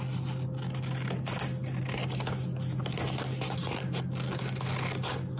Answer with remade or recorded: recorded